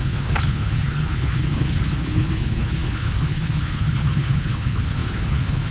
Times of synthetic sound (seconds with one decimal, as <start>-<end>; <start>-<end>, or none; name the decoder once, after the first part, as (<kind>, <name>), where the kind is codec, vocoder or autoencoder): 0.0-5.7 (codec, HILCodec)